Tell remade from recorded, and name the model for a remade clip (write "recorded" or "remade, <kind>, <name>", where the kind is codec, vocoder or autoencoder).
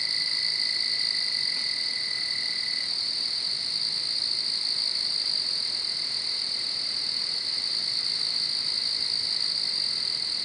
recorded